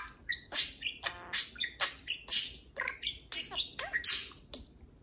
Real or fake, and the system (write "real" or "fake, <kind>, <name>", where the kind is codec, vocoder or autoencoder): real